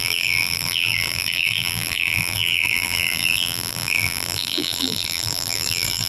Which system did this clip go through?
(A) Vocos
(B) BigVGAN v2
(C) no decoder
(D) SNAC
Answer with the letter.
B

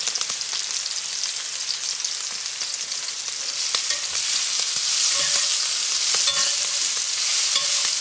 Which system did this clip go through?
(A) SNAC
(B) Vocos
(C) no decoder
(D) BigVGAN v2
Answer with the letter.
C